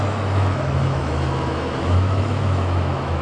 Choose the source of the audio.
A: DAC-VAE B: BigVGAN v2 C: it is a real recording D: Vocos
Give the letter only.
A